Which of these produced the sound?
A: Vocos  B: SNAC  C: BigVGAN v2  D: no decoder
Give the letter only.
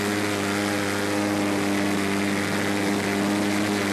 D